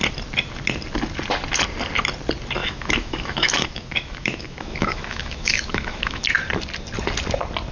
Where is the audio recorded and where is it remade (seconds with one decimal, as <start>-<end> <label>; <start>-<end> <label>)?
0.0-2.6 recorded; 2.6-6.2 remade; 6.2-7.7 recorded

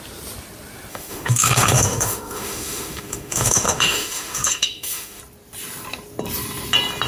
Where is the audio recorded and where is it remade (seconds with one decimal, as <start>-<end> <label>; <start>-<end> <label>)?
0.0-0.9 recorded; 0.9-5.2 remade; 5.2-7.1 recorded

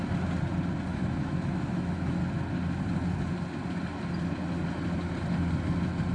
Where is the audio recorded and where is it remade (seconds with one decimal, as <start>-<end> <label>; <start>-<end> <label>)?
0.0-0.9 recorded; 0.9-2.2 remade; 2.2-6.1 recorded

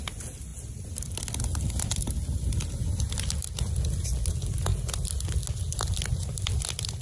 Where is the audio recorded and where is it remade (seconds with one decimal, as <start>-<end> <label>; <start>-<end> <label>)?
0.0-7.0 recorded

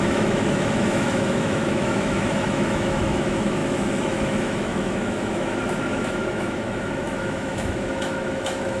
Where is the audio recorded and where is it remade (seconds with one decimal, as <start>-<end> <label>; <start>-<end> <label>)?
0.0-8.8 remade

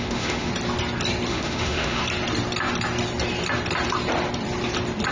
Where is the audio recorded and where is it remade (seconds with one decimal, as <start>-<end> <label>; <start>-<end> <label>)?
0.0-0.5 remade; 0.5-1.3 recorded; 1.3-2.0 remade; 2.0-5.1 recorded